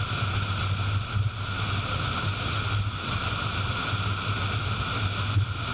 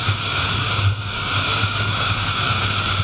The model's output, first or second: second